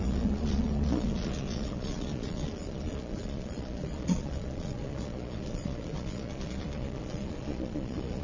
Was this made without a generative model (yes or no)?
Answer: no